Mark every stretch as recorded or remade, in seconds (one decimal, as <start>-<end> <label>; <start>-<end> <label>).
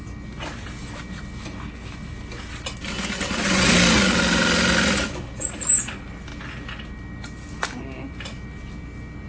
0.0-9.3 recorded